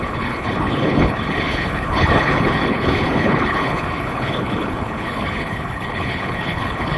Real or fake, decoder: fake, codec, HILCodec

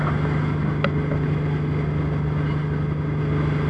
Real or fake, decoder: real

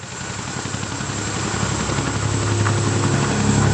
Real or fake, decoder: real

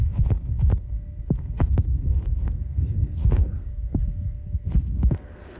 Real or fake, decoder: fake, codec, SNAC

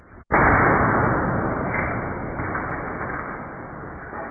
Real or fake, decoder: real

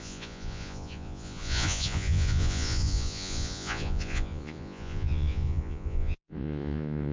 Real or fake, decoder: fake, vocoder, Vocos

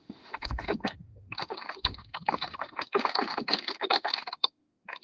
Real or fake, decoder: fake, autoencoder, DAC-VAE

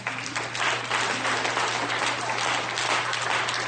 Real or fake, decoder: real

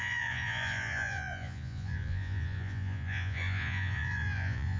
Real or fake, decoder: fake, vocoder, Vocos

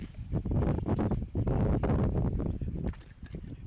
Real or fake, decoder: real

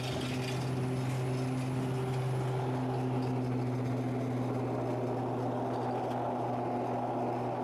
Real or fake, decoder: real